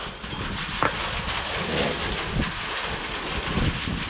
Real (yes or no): yes